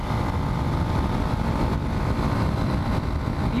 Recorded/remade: recorded